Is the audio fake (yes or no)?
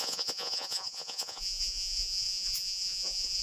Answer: yes